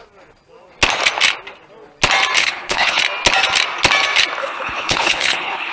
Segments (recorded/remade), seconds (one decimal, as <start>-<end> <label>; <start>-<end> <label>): 0.0-2.4 recorded; 2.4-3.0 remade; 3.0-4.4 recorded; 4.4-5.7 remade